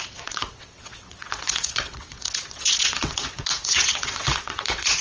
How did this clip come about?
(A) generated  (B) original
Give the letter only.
A